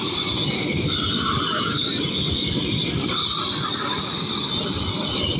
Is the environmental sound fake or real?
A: real